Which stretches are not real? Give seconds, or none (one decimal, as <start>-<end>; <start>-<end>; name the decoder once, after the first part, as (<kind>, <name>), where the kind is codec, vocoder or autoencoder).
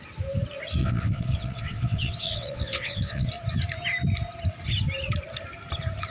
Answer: 0.8-3.3 (vocoder, WaveNeXt)